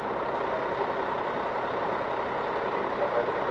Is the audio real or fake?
real